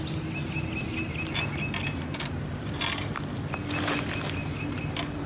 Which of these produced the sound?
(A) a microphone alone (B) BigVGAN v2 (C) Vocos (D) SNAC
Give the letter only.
A